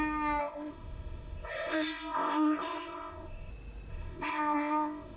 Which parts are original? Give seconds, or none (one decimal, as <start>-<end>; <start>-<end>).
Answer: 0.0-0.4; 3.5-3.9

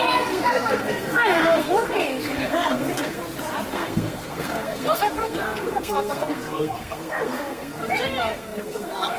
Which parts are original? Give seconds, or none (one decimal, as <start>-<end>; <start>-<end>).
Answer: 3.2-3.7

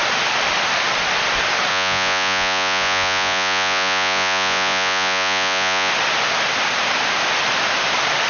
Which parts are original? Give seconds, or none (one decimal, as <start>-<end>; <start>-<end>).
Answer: 0.0-1.7; 5.9-8.3

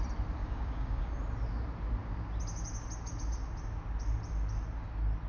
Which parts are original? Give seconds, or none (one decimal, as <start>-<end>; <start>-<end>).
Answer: 0.0-0.4; 1.1-5.3

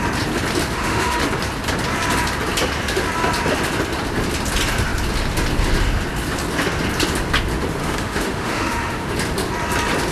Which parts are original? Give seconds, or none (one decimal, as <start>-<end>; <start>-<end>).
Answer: 0.0-0.7; 1.2-7.8; 9.1-10.1

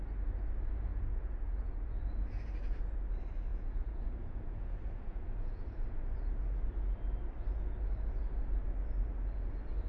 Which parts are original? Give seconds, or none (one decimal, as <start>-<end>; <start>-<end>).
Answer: 0.0-0.9; 2.0-3.5; 6.3-9.9

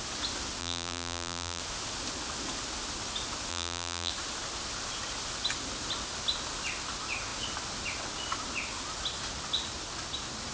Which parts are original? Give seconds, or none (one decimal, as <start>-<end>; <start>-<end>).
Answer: 0.0-0.6; 1.6-3.5; 4.1-10.5

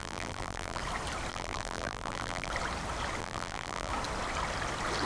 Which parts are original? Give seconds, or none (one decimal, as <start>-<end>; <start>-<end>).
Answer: 0.8-1.3; 2.5-3.2; 3.9-5.0